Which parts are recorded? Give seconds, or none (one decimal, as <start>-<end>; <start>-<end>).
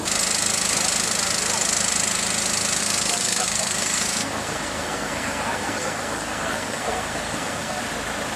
0.0-2.8; 7.8-8.4